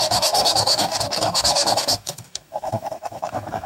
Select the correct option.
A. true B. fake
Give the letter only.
B